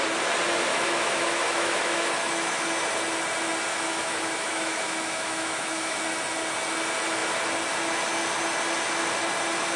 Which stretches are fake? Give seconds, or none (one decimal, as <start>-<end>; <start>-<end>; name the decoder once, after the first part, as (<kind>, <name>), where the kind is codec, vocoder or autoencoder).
0.7-2.6 (autoencoder, DAC-VAE); 3.7-6.0